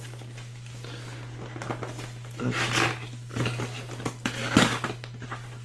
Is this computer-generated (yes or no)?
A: no